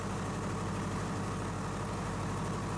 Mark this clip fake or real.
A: real